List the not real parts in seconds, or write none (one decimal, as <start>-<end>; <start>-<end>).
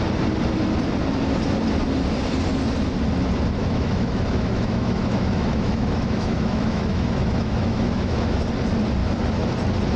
3.6-8.4